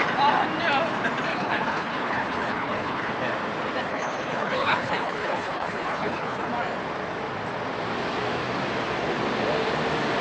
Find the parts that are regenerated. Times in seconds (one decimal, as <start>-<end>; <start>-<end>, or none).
1.3-3.1; 3.9-6.5

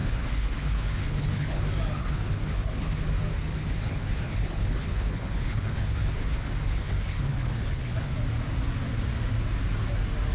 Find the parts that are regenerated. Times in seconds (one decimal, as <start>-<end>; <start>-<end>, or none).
0.0-1.6; 2.0-3.0; 3.6-8.1

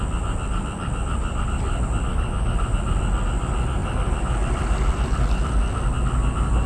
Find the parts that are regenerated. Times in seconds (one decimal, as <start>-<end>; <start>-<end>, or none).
none